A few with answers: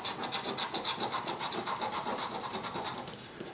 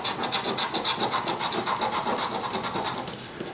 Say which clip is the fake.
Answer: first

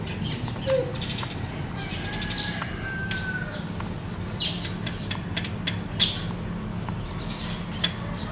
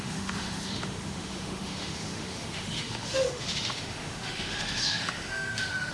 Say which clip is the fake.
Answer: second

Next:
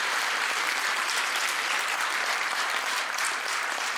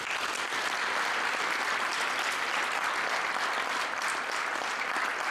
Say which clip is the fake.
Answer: first